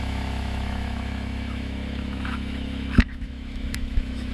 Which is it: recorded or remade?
remade